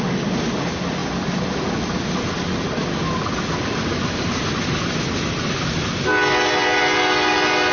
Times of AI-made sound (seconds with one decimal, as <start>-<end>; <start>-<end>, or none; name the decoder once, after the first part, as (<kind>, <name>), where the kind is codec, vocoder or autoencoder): none

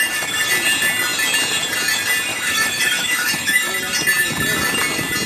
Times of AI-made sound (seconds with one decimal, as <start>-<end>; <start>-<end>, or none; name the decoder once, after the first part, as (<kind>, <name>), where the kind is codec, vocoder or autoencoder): 0.0-0.5 (autoencoder, DAC-VAE); 2.3-3.7

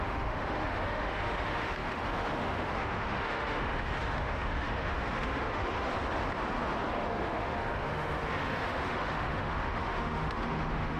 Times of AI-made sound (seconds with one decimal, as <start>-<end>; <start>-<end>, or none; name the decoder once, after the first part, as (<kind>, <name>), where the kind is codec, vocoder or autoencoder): 0.0-5.9 (autoencoder, DAC-VAE); 6.9-11.0

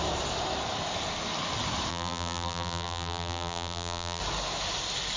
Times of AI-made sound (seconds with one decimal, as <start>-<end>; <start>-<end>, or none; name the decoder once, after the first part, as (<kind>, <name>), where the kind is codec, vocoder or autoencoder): 1.9-4.2 (vocoder, BigVGAN v2)

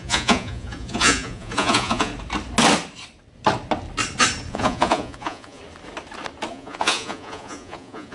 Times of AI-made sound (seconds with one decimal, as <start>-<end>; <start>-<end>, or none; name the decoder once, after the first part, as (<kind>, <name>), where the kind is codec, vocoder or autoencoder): 0.0-2.1 (vocoder, Vocos); 4.5-5.6; 6.5-8.1

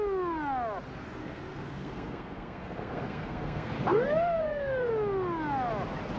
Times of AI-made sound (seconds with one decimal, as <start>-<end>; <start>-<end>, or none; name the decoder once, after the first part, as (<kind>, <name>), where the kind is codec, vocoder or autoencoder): 1.2-4.9 (codec, SNAC)

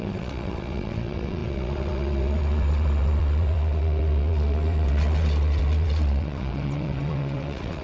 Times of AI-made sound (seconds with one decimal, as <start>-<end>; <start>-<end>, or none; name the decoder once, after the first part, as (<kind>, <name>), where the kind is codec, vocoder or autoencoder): 0.0-7.8 (vocoder, WaveNeXt)

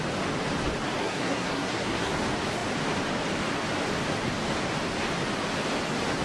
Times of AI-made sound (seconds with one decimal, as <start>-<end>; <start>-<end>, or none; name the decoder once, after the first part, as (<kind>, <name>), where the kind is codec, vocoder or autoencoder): 1.0-2.1 (codec, SNAC)